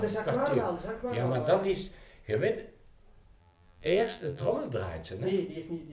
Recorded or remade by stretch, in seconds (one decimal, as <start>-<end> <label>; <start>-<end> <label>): 0.0-3.4 recorded; 3.4-4.5 remade; 4.5-5.9 recorded